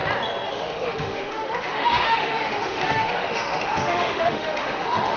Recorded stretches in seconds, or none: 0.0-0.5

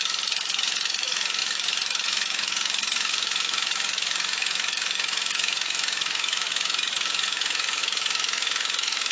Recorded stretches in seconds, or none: none

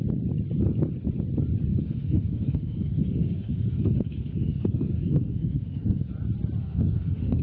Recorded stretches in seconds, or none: 0.0-1.7; 6.1-6.6

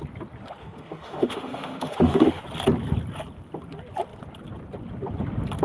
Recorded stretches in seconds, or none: 0.0-0.6; 2.4-5.6

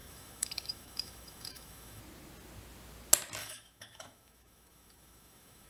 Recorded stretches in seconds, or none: 2.0-3.4